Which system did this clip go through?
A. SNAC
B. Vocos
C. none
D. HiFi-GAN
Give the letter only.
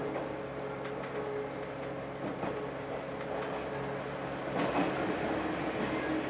C